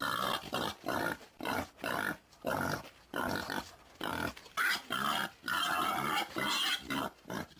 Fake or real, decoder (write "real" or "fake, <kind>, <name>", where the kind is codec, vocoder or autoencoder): real